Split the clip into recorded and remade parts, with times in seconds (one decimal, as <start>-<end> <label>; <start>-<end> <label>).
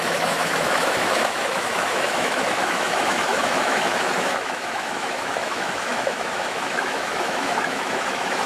0.0-8.5 remade